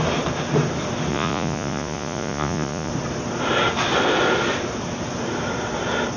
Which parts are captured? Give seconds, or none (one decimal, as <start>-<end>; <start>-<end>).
0.0-1.1; 2.9-6.2